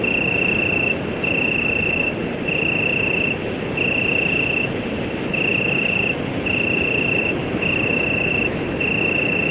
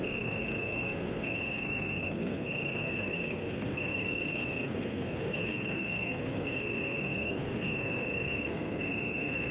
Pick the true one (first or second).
first